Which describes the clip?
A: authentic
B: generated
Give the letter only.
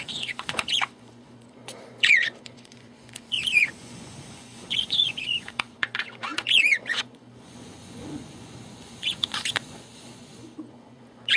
B